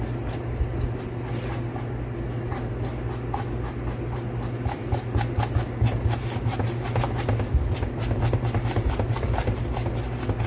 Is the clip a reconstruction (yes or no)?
no